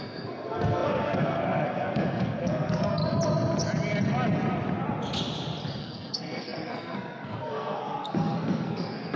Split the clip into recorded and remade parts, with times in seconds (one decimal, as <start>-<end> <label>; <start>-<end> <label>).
0.0-3.0 remade; 3.0-5.8 recorded; 5.8-9.2 remade